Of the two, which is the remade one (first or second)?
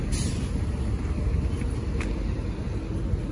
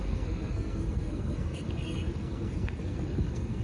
second